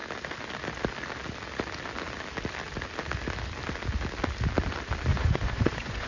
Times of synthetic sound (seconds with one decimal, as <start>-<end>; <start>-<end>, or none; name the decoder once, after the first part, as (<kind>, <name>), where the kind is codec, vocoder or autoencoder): 5.1-6.1 (vocoder, Vocos)